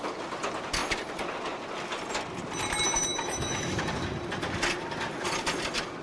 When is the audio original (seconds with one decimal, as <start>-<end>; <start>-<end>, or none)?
0.0-3.1; 3.8-6.0